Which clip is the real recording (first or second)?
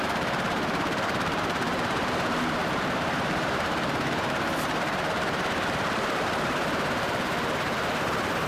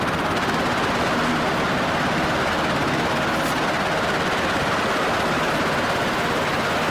second